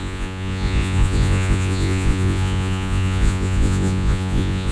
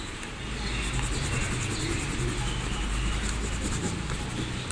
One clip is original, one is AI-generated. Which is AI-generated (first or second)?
first